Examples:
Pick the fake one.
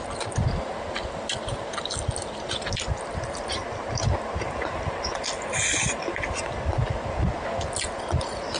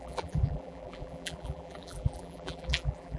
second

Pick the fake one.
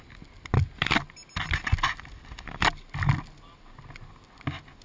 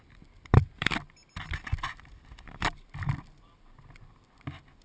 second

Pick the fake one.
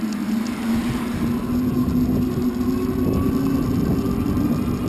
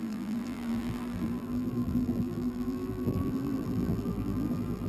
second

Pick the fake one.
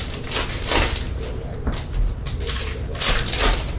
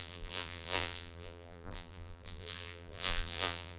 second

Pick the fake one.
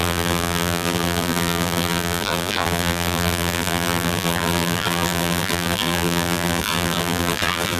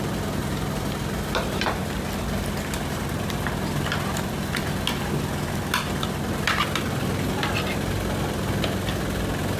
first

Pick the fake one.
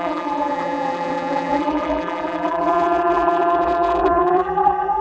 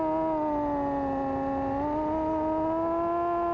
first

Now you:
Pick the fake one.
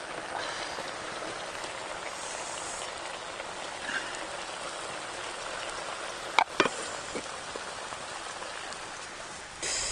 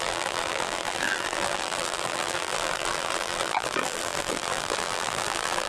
second